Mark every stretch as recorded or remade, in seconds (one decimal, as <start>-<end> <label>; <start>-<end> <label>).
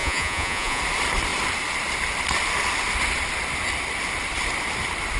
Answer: 0.0-0.8 remade; 0.8-5.2 recorded